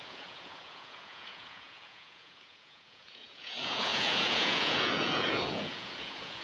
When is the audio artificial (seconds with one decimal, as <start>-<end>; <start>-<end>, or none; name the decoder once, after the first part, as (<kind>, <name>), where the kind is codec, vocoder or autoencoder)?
0.0-6.4 (vocoder, Vocos)